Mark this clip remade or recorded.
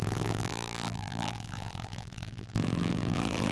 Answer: remade